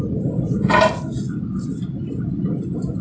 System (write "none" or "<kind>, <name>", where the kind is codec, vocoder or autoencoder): none